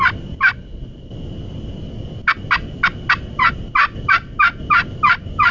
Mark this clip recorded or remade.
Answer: recorded